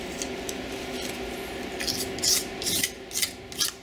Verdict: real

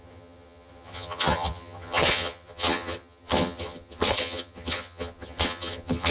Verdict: fake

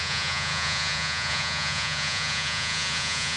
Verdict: fake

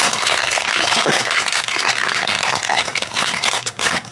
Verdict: fake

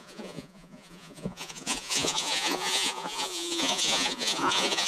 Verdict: fake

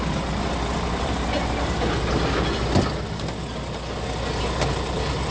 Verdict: real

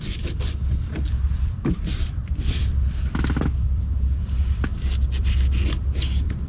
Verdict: fake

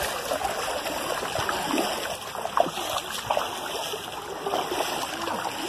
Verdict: real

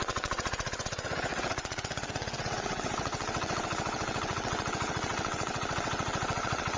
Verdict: fake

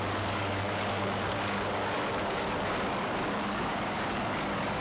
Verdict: fake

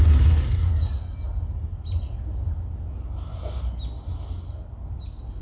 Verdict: real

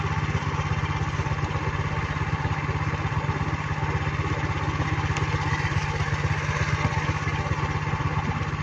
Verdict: real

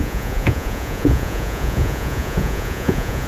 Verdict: fake